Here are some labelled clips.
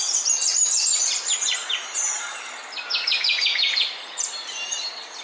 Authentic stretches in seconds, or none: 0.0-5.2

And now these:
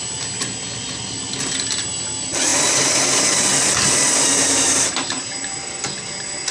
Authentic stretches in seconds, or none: 0.0-4.3; 5.7-6.5

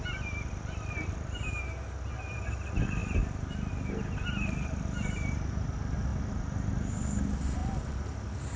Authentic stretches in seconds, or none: 3.0-3.7

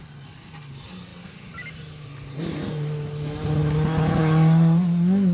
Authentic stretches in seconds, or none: 0.0-5.3